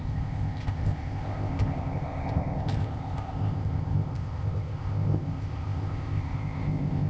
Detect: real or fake fake